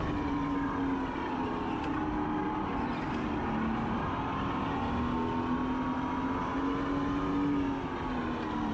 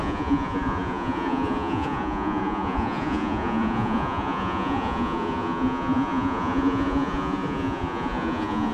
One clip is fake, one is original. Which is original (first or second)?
first